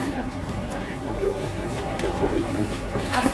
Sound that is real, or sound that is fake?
fake